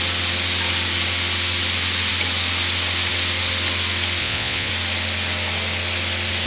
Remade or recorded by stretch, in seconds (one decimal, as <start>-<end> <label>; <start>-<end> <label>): 0.0-4.2 recorded; 4.2-4.7 remade; 4.7-6.5 recorded